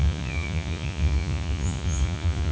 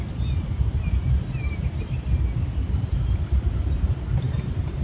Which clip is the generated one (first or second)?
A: first